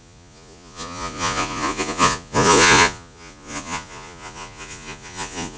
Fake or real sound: fake